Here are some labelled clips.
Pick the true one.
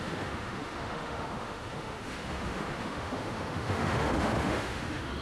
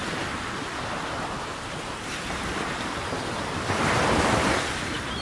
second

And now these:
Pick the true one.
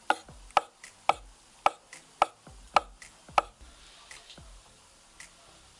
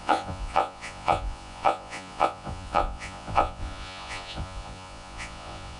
first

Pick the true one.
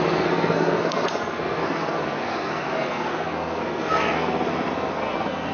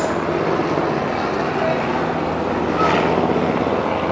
second